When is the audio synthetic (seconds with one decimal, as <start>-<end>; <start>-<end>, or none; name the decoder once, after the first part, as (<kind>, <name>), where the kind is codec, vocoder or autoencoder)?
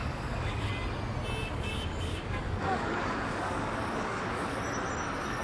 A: 0.0-0.7 (codec, DAC); 1.4-4.6